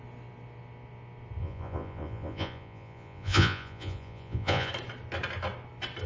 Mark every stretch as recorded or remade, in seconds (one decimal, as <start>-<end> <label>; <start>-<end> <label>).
0.0-1.4 recorded; 1.4-4.7 remade; 4.7-6.1 recorded